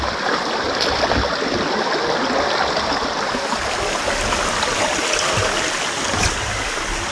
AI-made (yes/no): no